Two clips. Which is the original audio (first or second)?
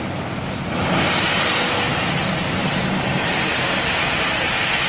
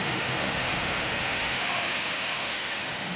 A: first